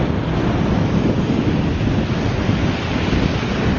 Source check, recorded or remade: recorded